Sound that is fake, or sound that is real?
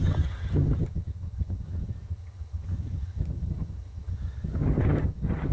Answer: fake